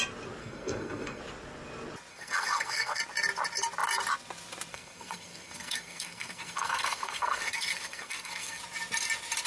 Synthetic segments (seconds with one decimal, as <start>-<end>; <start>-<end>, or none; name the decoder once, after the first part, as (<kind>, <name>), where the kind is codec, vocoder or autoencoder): 0.4-1.2 (codec, SNAC); 2.1-3.0; 4.7-8.6